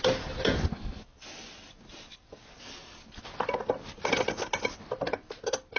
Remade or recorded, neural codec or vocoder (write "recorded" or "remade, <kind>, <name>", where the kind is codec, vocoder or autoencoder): recorded